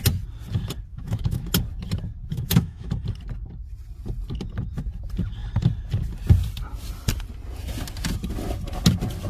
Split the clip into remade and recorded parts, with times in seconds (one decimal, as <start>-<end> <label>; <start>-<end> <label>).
0.0-0.9 recorded; 0.9-1.5 remade; 1.5-2.3 recorded; 2.3-2.9 remade; 2.9-9.3 recorded